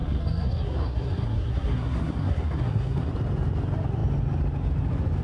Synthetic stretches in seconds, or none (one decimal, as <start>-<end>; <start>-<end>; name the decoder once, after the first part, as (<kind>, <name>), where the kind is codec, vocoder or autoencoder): 0.0-3.1 (codec, SNAC)